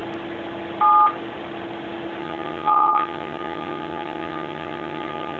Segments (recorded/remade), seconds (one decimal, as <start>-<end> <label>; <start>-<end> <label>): 0.0-2.2 recorded; 2.2-5.4 remade